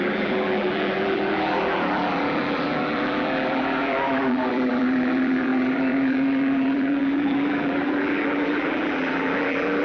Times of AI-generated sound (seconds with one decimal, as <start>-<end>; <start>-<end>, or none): 0.0-9.8